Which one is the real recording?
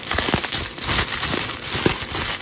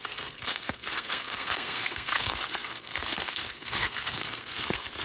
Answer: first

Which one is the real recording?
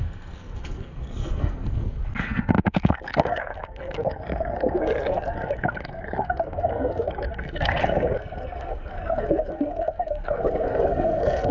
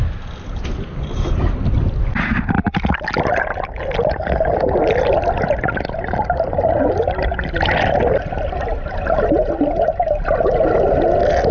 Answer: second